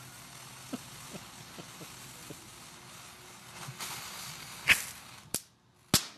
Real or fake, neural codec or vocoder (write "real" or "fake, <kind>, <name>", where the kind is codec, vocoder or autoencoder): real